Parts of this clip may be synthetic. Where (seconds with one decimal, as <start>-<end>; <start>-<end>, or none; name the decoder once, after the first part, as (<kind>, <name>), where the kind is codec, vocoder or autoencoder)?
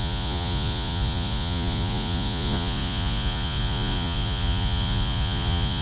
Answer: 0.0-5.8 (vocoder, Vocos)